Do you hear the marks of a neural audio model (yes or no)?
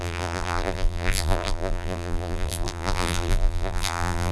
yes